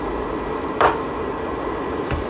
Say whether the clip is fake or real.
fake